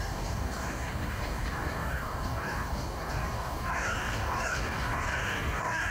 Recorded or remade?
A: remade